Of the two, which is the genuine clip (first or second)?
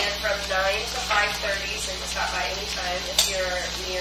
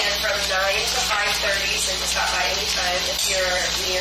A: first